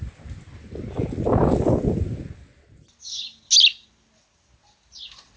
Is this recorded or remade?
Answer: recorded